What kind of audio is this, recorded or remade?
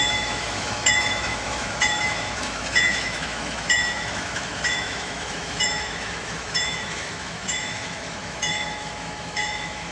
remade